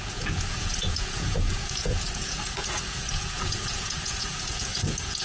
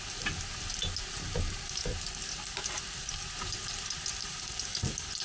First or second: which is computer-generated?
first